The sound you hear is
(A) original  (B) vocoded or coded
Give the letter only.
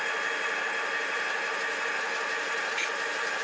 B